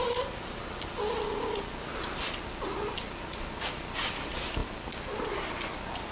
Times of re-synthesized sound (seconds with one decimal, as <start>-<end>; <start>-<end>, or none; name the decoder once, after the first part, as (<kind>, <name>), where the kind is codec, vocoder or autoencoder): 4.6-6.1 (vocoder, BigVGAN v2)